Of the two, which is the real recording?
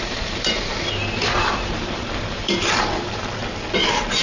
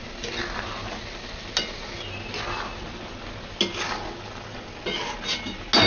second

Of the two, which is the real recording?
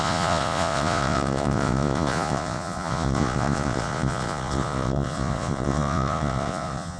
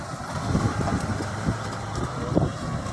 second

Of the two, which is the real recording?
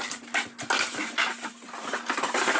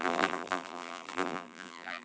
first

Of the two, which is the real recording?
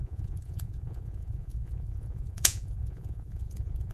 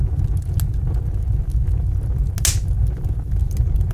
second